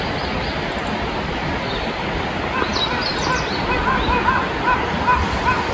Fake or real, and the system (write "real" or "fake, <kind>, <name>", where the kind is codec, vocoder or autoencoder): real